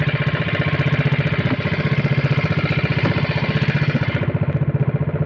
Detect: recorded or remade recorded